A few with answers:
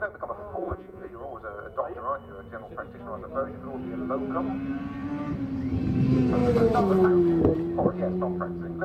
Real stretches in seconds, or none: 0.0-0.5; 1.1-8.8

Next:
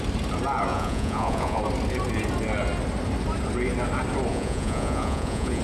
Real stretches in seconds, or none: 0.0-0.7; 1.6-4.3

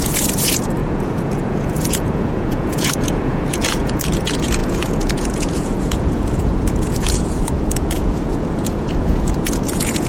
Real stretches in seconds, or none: none

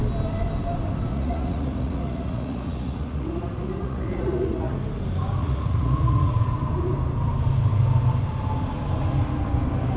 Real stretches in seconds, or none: 0.0-1.1; 4.8-5.4; 6.4-10.0

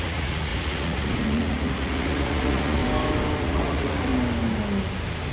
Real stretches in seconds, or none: 2.8-3.4; 4.1-5.3